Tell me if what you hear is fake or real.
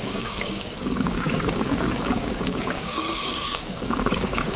fake